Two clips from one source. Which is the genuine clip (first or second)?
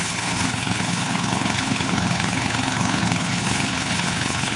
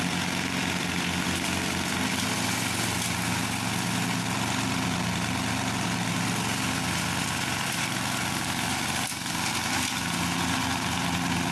second